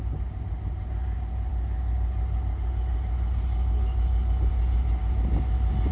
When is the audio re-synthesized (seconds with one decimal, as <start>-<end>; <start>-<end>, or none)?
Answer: none